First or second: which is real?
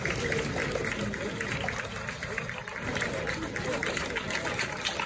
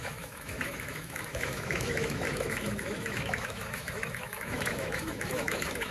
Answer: first